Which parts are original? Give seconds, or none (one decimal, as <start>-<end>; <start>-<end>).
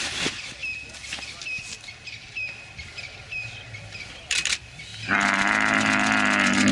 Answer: 0.0-6.7